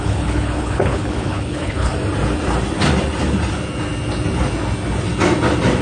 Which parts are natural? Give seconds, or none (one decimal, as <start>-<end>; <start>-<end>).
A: 1.9-5.8